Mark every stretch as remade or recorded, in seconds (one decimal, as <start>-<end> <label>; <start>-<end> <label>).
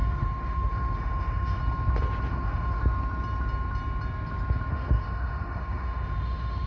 0.0-1.6 remade; 1.6-2.3 recorded; 2.3-2.8 remade; 2.8-4.7 recorded; 4.7-6.7 remade